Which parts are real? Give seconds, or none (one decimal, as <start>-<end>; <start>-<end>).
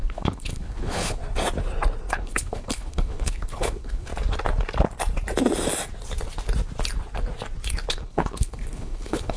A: 1.2-2.1; 4.1-7.9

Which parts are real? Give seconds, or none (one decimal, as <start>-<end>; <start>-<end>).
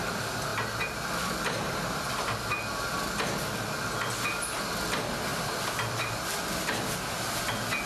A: 0.0-5.3; 7.4-7.9